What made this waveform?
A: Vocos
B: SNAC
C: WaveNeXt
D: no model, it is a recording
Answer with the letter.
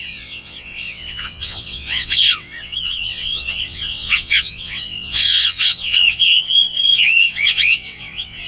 C